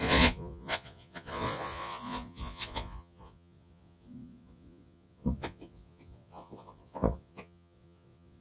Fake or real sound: fake